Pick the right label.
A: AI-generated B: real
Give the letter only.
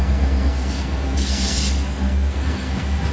A